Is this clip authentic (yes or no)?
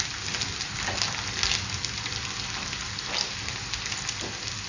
yes